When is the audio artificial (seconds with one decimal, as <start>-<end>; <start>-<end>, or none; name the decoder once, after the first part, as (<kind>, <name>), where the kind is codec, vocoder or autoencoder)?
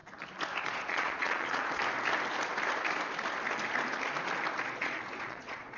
0.6-1.8 (vocoder, Vocos); 4.7-5.8